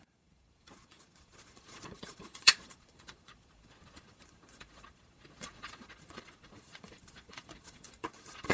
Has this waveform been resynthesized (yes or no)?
yes